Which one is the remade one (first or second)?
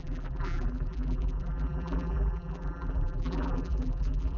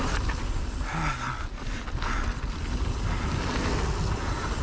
first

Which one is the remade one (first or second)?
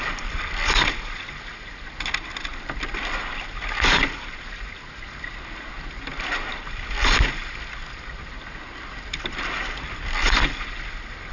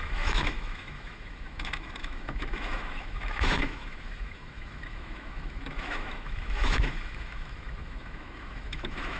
second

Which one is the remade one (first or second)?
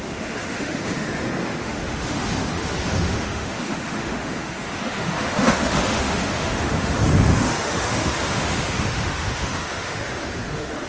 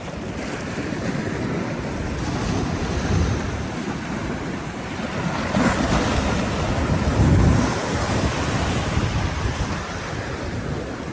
first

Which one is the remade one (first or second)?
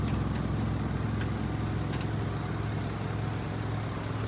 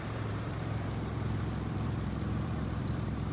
second